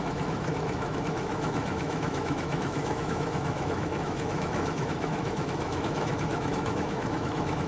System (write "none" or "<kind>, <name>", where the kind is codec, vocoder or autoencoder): autoencoder, DAC-VAE